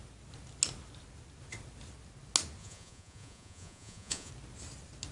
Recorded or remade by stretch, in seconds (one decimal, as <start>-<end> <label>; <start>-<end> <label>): 0.0-2.6 recorded; 2.6-4.3 remade; 4.3-5.1 recorded